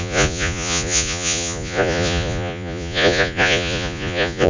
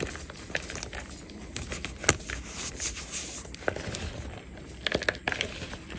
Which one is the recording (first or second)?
second